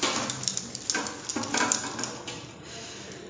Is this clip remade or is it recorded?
recorded